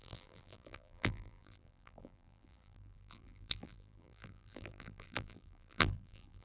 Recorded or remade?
remade